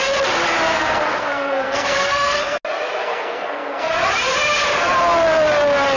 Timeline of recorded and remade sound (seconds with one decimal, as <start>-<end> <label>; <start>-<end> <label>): 0.0-0.7 recorded; 0.7-2.6 remade; 2.6-3.0 recorded; 3.0-3.9 remade; 3.9-6.0 recorded